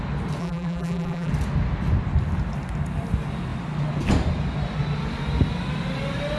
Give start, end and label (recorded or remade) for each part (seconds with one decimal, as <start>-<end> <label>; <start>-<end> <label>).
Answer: 0.0-0.4 recorded; 0.4-1.3 remade; 1.3-6.4 recorded